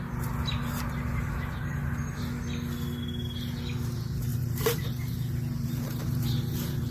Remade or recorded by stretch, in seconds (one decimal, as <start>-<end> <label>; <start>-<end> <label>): 0.0-4.3 recorded; 4.3-6.9 remade